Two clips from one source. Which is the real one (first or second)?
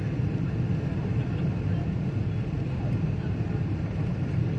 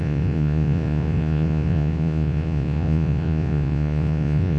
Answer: first